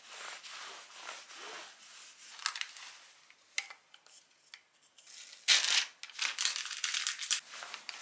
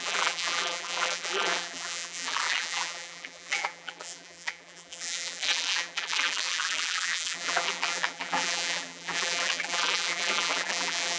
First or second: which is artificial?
second